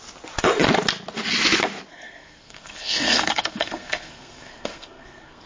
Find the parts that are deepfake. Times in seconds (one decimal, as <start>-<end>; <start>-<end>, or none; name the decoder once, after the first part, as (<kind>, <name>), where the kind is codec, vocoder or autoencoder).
1.9-5.5 (codec, SNAC)